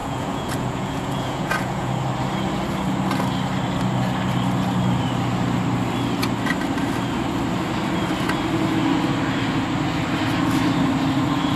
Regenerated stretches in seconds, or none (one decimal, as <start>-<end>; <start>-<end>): 0.0-1.9